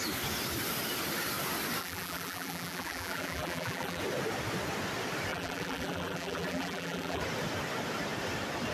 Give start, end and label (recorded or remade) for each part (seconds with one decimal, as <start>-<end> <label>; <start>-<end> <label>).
0.0-1.8 recorded; 1.8-4.0 remade; 4.0-5.3 recorded; 5.3-7.2 remade; 7.2-8.7 recorded